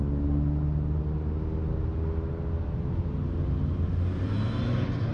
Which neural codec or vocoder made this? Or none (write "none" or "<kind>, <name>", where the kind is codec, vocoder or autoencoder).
none